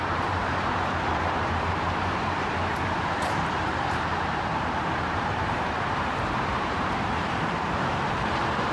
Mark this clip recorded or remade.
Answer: remade